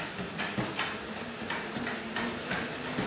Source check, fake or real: real